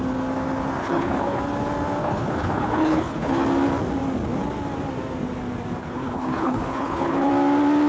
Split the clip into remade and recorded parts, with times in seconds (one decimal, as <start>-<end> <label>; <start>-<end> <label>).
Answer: 0.0-0.8 recorded; 0.8-1.4 remade; 1.4-2.0 recorded; 2.0-3.4 remade; 3.4-5.8 recorded; 5.8-7.3 remade; 7.3-7.9 recorded